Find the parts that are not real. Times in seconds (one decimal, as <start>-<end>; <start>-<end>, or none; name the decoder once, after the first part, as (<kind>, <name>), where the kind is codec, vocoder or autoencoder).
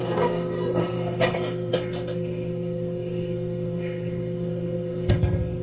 0.0-5.6 (codec, SNAC)